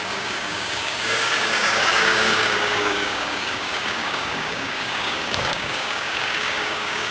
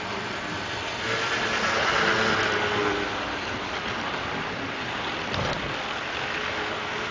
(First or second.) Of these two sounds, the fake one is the first